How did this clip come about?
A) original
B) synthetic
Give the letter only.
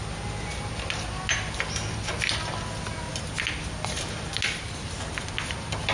A